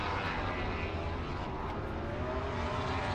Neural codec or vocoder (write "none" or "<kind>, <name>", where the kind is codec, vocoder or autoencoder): none